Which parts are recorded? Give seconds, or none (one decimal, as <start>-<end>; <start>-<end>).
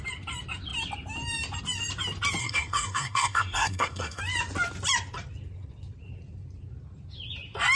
0.0-2.4; 4.2-7.8